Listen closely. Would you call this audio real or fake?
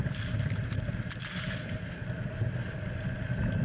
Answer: real